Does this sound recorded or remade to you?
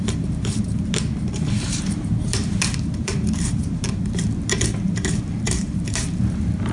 remade